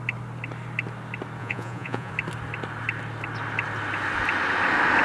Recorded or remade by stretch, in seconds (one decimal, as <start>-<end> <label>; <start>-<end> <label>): 0.0-1.4 recorded; 1.4-2.1 remade; 2.1-5.0 recorded